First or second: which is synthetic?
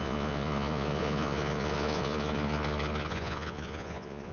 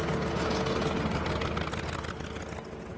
first